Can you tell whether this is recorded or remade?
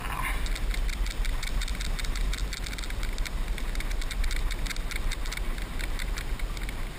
recorded